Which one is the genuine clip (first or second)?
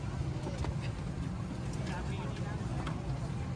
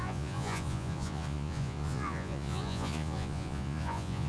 first